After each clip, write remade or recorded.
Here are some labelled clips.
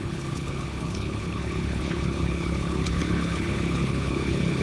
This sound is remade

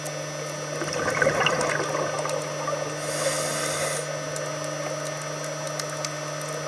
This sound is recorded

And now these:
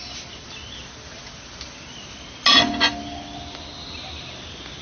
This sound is recorded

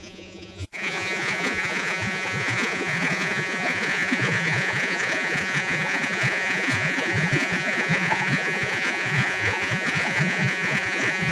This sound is remade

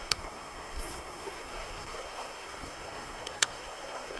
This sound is remade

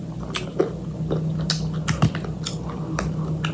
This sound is recorded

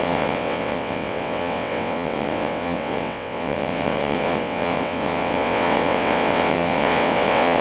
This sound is remade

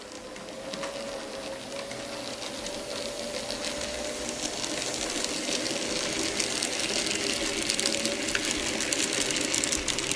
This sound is recorded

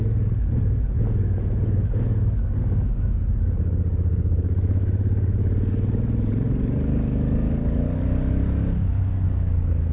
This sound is remade